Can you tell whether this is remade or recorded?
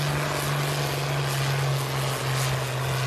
recorded